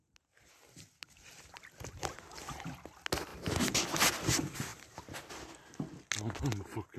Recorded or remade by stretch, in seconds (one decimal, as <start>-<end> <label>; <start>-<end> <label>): 0.0-7.0 recorded